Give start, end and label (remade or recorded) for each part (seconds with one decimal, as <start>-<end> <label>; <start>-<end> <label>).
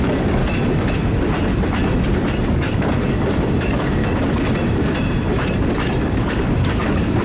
0.0-0.4 remade; 0.4-2.5 recorded; 2.5-4.0 remade; 4.0-6.1 recorded; 6.1-7.2 remade